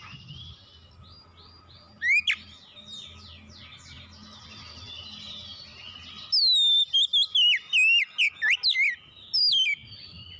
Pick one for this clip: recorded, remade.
recorded